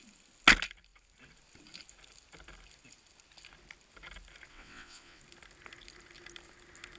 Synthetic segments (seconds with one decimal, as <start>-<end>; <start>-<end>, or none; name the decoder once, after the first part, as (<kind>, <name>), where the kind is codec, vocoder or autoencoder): 4.5-5.2 (vocoder, WaveNeXt)